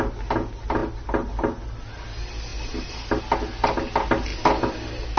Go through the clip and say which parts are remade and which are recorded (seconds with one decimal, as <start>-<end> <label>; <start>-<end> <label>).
0.0-5.2 recorded